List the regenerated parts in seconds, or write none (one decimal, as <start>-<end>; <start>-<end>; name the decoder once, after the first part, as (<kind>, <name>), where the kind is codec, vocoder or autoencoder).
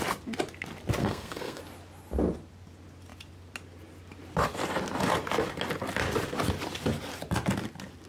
1.0-1.6 (codec, SNAC)